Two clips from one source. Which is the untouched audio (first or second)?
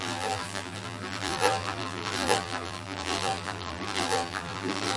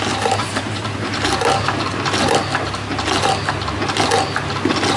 second